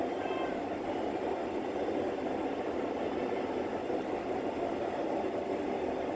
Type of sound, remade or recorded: recorded